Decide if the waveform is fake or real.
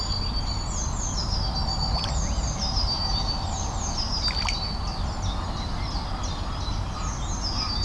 real